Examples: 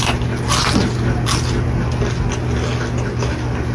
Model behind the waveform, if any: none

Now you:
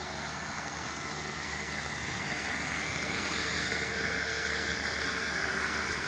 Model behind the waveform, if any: codec, SNAC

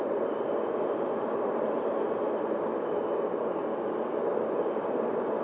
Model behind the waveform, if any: none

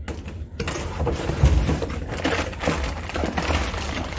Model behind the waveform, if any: none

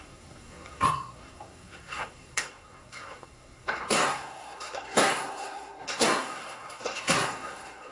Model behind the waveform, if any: codec, SNAC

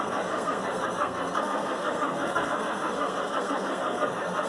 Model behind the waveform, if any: codec, SNAC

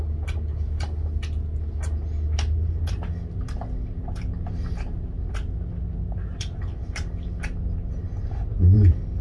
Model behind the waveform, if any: none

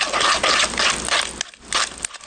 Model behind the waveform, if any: none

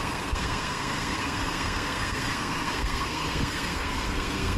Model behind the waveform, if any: codec, SNAC